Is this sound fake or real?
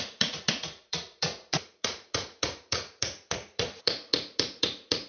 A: fake